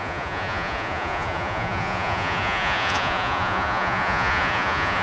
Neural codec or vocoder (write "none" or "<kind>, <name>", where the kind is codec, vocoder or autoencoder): vocoder, Vocos